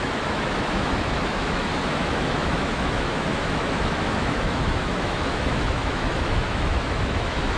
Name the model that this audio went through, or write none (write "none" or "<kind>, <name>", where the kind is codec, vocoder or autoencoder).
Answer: autoencoder, DAC-VAE